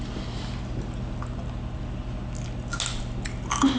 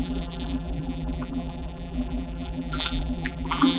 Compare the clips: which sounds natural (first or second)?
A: first